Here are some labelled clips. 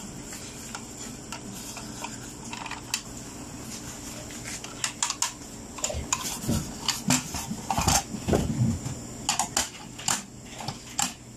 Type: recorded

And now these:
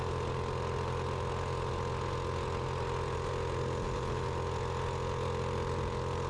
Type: recorded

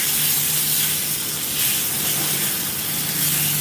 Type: recorded